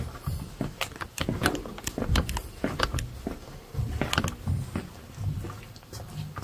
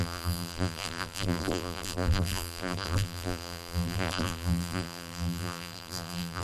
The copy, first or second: second